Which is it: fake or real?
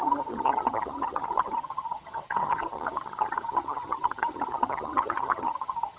fake